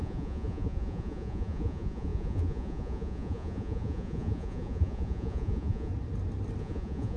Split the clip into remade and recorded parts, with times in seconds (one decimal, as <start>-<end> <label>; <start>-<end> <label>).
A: 0.0-5.9 remade; 5.9-6.6 recorded; 6.6-7.2 remade